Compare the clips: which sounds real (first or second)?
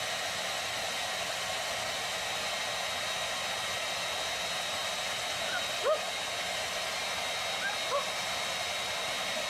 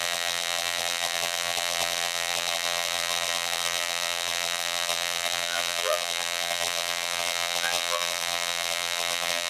first